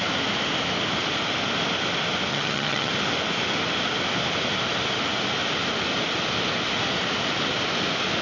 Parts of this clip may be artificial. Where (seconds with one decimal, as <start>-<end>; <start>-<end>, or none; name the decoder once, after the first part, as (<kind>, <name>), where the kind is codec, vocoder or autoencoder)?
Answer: 2.3-2.9 (vocoder, HiFi-GAN)